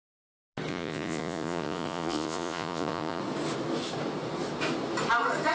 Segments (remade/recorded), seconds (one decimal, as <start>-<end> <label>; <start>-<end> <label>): 0.0-0.7 recorded; 0.7-3.2 remade; 3.2-5.5 recorded